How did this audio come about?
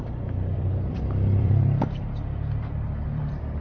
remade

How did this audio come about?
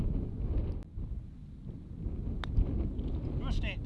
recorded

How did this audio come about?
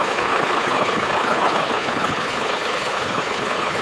remade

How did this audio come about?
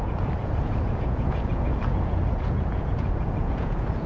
remade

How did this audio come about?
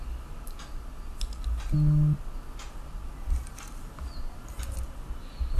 recorded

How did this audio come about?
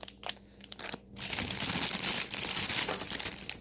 recorded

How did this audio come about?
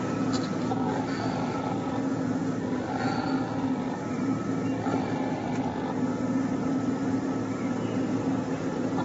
recorded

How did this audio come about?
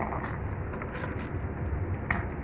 recorded